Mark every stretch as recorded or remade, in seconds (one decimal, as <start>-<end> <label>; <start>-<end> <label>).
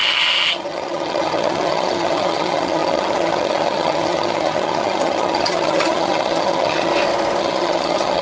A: 0.0-6.9 remade; 6.9-7.4 recorded; 7.4-8.2 remade